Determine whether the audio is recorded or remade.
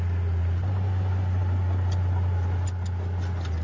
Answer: recorded